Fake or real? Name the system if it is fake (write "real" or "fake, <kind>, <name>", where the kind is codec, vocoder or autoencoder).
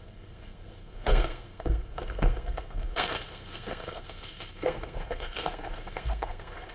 fake, codec, SNAC